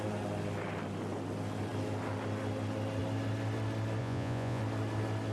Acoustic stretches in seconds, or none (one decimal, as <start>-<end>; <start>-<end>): 0.0-4.0; 4.6-5.3